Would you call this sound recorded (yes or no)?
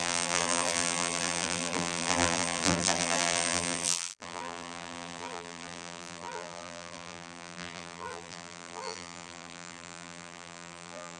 no